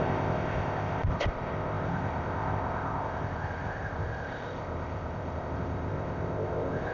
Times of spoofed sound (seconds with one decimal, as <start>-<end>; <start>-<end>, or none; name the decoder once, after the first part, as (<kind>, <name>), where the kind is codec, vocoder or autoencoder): 0.0-6.9 (codec, ZipCodec)